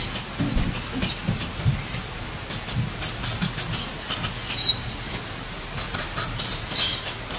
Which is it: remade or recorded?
recorded